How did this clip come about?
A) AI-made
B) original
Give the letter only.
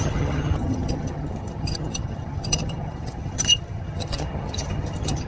A